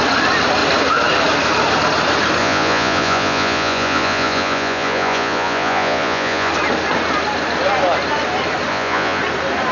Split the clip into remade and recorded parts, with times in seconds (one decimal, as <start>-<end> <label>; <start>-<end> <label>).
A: 0.0-2.4 recorded; 2.4-6.5 remade; 6.5-8.7 recorded; 8.7-9.2 remade; 9.2-9.7 recorded